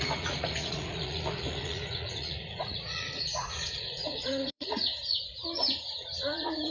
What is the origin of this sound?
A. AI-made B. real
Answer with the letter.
A